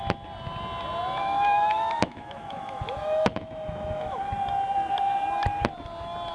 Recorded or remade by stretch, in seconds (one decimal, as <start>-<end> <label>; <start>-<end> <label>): 0.0-1.2 recorded; 1.2-4.2 remade; 4.2-6.3 recorded